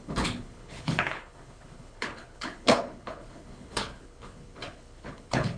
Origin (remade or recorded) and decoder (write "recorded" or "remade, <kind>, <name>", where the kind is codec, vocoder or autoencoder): remade, codec, HILCodec